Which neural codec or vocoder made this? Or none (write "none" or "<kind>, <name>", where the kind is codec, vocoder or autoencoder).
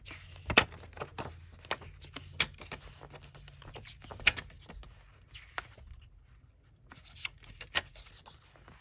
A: none